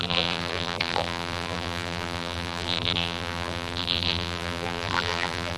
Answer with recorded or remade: remade